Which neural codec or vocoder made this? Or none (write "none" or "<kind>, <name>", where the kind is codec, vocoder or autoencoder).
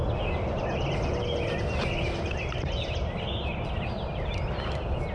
none